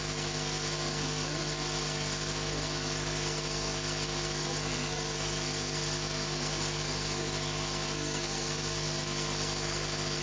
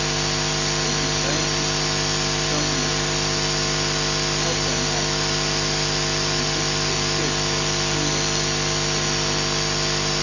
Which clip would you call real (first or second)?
second